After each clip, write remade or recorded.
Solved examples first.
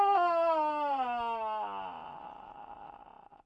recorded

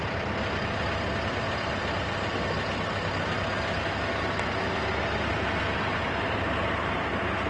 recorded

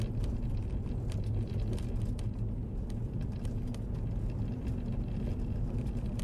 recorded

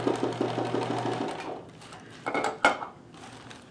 recorded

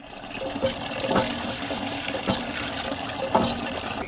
recorded